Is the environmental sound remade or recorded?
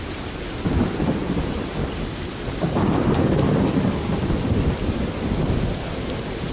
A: recorded